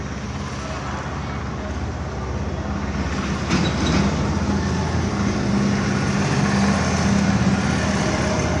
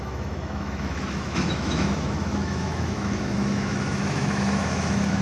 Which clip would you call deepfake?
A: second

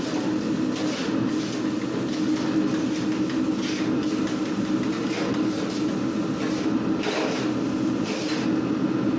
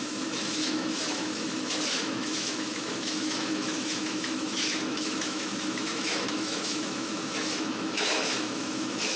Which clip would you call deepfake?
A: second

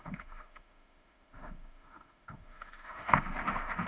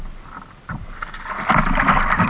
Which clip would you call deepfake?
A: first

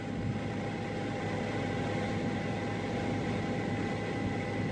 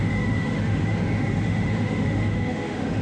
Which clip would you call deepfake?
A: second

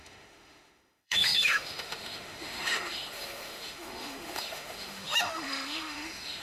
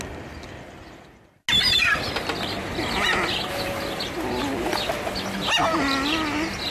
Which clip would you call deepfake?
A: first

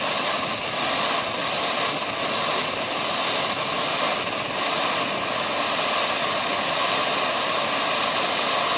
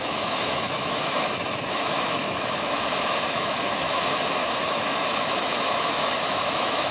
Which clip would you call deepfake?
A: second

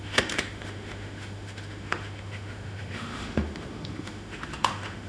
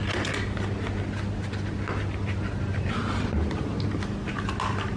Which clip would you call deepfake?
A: first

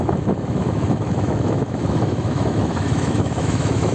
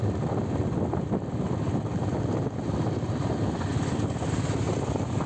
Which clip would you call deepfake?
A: first